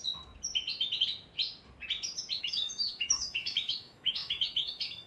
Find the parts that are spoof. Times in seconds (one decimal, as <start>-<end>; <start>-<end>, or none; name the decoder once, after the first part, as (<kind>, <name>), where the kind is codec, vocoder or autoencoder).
2.4-5.1 (autoencoder, DAC-VAE)